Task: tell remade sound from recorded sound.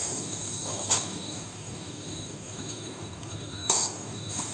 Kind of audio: remade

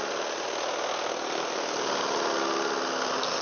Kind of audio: recorded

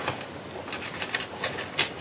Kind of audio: recorded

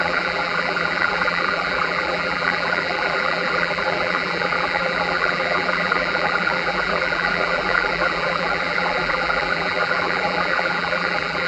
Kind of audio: remade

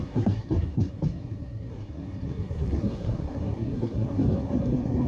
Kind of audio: remade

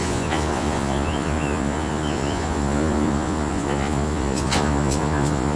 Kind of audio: remade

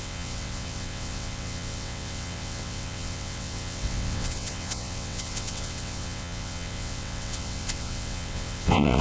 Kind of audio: remade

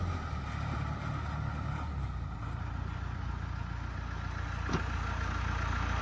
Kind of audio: recorded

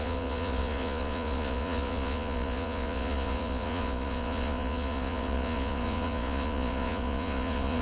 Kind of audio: remade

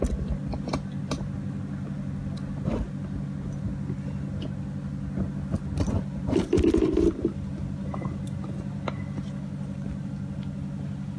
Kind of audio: recorded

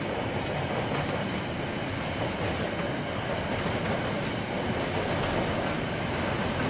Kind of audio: recorded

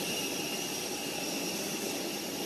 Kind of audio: recorded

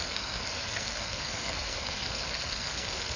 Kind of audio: remade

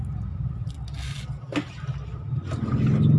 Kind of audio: recorded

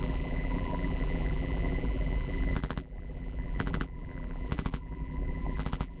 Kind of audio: remade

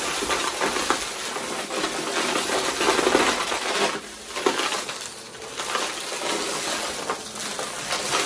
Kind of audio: recorded